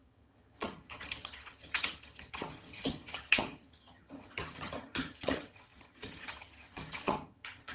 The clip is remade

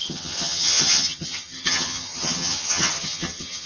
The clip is remade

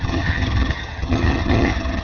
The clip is remade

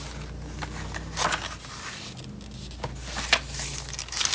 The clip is recorded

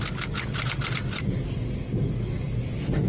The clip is recorded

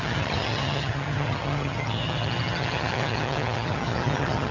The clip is remade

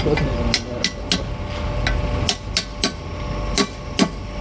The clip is recorded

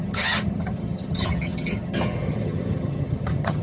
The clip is remade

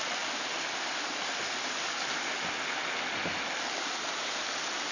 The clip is recorded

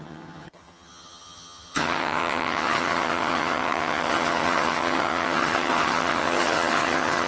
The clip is remade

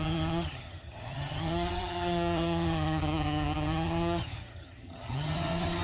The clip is remade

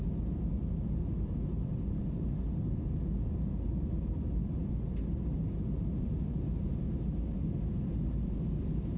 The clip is recorded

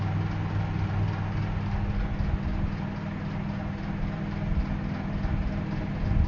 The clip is recorded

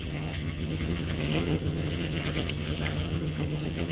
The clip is remade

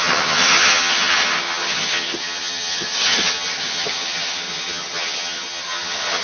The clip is remade